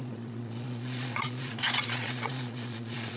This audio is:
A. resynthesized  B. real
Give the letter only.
A